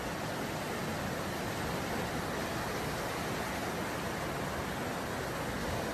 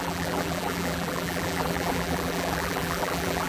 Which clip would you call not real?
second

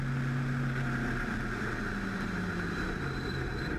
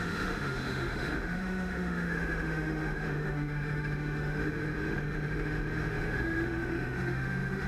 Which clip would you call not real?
second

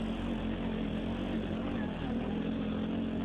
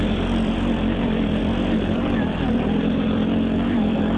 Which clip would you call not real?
second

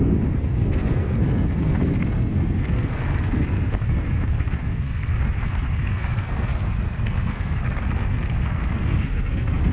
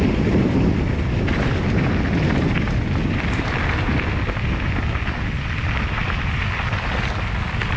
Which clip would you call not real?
first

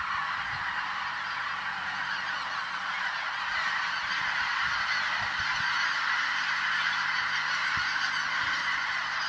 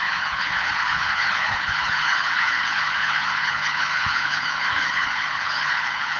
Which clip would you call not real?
second